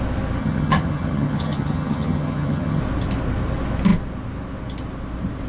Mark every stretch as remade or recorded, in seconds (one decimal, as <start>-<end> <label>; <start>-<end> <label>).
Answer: 0.0-0.4 recorded; 0.4-2.8 remade; 2.8-5.5 recorded